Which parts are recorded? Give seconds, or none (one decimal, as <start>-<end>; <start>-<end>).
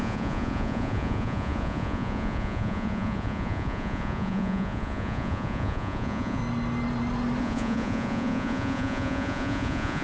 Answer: 6.4-7.4